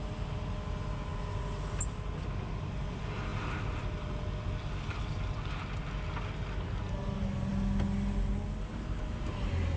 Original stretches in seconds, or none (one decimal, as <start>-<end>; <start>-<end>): 0.0-9.8